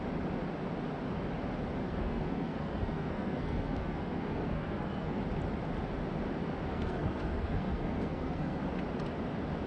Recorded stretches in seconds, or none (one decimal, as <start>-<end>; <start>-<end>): 0.0-1.8; 5.2-6.7; 8.6-9.7